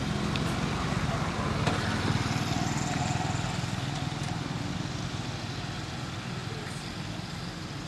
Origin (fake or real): real